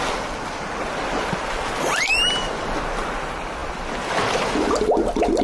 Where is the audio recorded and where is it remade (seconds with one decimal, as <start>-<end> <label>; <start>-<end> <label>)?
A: 0.0-5.4 recorded